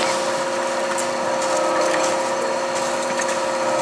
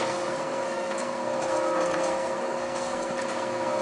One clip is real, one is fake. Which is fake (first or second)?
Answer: second